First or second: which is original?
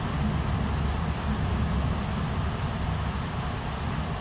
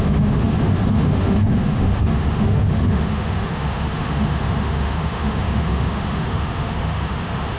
first